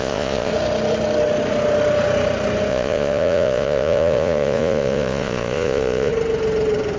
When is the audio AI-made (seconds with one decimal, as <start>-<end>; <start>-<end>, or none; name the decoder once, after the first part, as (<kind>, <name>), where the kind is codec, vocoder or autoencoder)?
0.0-0.5 (vocoder, Vocos); 2.7-6.1